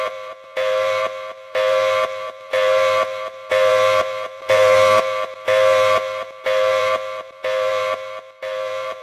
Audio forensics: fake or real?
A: fake